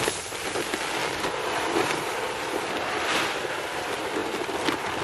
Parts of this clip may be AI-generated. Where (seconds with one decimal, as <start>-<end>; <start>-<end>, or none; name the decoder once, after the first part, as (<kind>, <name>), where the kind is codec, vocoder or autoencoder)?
none